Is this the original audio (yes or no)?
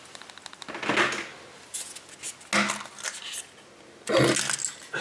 yes